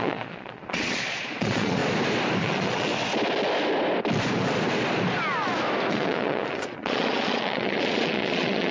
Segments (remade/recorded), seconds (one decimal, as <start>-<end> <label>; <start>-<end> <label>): 0.0-1.8 remade; 1.8-2.4 recorded; 2.4-2.9 remade; 2.9-5.9 recorded; 5.9-8.7 remade